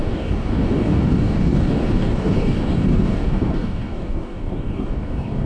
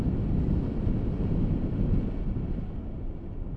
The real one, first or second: second